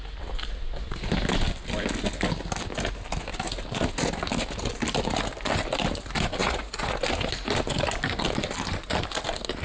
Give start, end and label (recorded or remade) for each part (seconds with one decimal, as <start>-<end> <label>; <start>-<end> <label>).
0.0-6.4 recorded; 6.4-7.0 remade; 7.0-9.6 recorded